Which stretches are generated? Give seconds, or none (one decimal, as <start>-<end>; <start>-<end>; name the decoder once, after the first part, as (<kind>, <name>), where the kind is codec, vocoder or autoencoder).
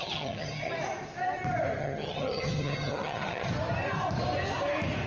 0.0-0.7 (vocoder, HiFi-GAN); 1.8-3.5